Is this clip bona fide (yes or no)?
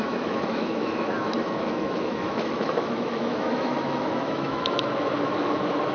no